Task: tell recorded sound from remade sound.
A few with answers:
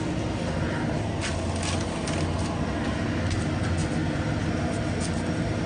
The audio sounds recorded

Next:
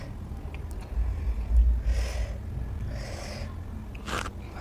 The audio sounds recorded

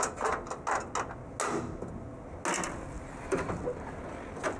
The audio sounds recorded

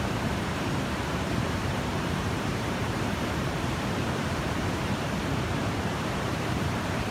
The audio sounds remade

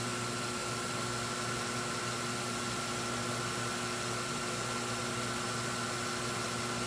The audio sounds recorded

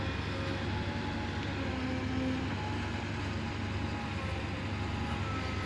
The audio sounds recorded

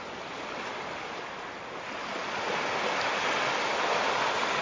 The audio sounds recorded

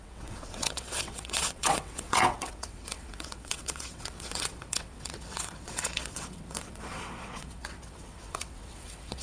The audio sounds remade